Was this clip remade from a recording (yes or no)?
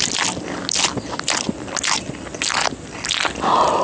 no